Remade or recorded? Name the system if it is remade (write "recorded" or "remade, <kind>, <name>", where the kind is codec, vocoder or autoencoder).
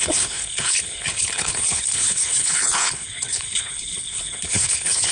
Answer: remade, codec, HILCodec